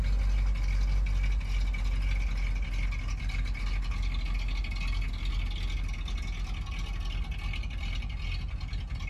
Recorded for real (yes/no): yes